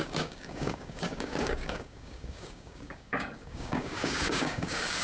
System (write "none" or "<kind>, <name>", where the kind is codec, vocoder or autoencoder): codec, DAC